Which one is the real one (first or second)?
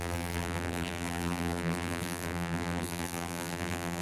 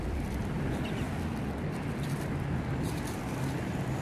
second